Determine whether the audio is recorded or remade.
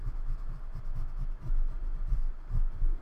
recorded